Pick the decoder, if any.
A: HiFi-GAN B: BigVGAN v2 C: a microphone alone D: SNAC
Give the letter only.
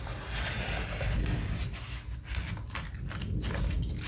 C